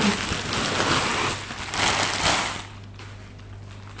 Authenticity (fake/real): real